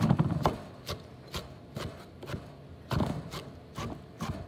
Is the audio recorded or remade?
recorded